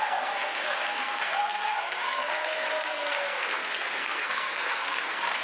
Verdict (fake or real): fake